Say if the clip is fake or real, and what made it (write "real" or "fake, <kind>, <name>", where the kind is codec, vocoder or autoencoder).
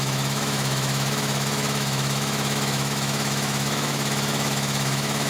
fake, autoencoder, DAC-VAE